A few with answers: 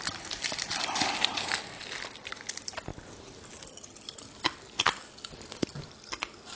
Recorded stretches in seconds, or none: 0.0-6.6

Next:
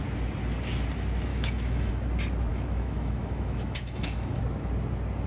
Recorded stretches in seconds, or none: 0.0-1.3; 1.9-2.5; 4.4-5.3